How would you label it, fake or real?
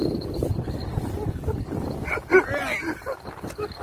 fake